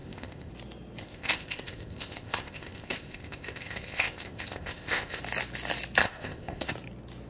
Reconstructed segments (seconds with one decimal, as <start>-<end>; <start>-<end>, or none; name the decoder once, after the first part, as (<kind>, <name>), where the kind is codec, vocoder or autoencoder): 0.0-0.5 (codec, ZipCodec); 1.0-5.2; 6.0-6.7